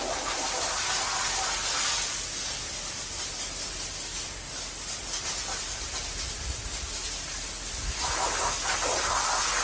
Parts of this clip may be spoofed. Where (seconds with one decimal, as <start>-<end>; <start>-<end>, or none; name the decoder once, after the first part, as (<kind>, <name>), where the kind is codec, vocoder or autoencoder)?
none